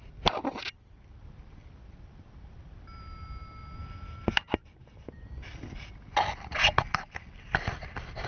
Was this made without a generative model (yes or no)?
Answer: yes